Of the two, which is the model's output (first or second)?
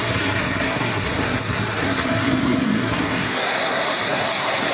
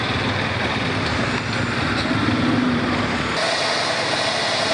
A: first